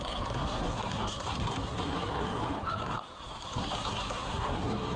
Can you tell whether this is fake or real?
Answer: fake